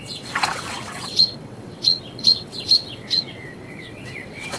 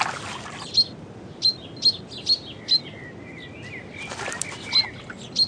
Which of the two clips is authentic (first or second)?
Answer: second